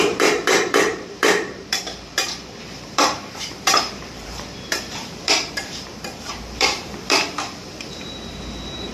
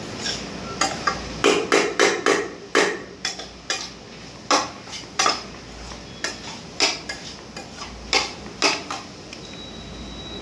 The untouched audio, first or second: second